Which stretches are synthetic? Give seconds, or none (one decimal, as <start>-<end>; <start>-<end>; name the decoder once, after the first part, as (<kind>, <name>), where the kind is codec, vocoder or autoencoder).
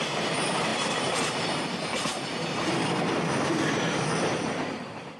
0.0-5.2 (vocoder, BigVGAN v2)